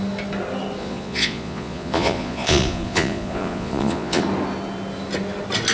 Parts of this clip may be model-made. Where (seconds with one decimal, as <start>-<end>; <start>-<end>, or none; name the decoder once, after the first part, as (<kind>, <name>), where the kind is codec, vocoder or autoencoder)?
0.8-4.2 (vocoder, Vocos)